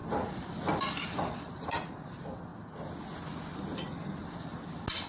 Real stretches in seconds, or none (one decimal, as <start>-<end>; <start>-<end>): 2.5-5.1